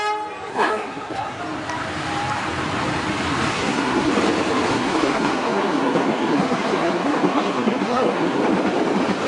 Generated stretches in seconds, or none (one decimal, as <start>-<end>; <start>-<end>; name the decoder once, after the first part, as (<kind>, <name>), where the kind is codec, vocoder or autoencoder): 0.5-1.4 (codec, SNAC); 3.5-4.1; 4.7-8.4